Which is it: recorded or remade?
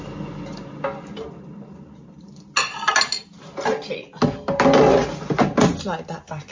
recorded